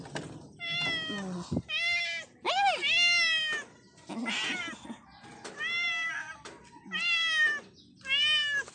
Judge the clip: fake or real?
real